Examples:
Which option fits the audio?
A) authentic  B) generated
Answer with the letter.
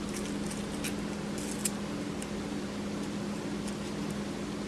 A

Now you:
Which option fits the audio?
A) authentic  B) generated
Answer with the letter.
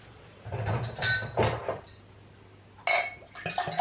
A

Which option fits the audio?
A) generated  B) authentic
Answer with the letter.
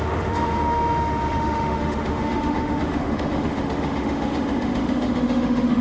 A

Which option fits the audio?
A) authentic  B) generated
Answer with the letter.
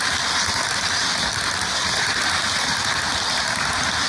A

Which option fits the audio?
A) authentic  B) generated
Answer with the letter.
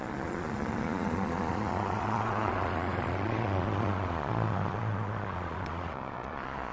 B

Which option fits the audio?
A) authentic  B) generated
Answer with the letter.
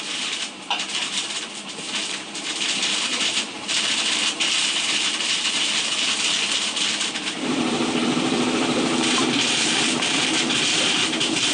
B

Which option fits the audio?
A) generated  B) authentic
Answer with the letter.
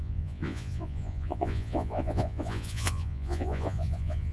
A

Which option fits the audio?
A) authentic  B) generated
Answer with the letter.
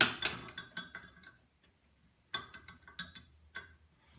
A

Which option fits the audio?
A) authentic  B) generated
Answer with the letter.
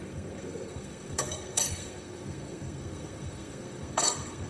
B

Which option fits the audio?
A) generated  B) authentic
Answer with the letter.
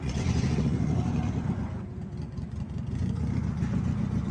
A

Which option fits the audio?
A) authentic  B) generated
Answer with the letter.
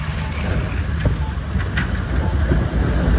A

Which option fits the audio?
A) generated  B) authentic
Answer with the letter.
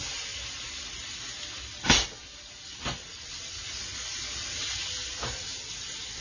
B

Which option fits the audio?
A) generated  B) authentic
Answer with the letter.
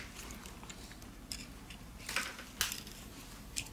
B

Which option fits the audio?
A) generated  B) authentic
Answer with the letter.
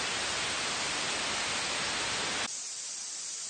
B